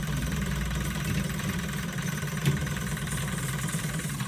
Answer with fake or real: fake